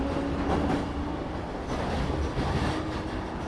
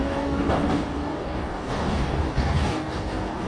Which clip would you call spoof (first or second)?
second